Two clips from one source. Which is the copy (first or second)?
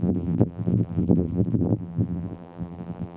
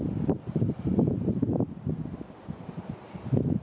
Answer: first